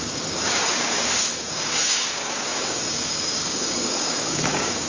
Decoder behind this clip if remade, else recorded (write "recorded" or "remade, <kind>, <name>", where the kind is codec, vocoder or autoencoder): remade, codec, DAC